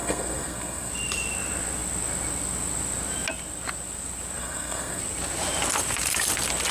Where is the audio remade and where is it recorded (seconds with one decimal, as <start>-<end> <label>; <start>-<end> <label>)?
0.0-0.9 remade; 0.9-4.4 recorded; 4.4-5.0 remade; 5.0-6.7 recorded